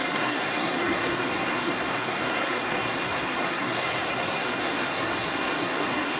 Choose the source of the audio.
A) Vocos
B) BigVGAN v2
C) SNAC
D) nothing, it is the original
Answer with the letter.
C